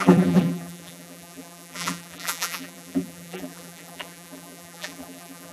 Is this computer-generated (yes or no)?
yes